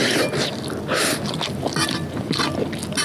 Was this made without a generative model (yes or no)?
yes